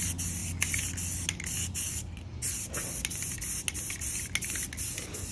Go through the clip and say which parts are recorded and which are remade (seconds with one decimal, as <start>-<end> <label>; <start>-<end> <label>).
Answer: 0.0-5.3 recorded